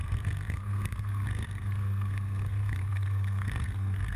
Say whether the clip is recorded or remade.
remade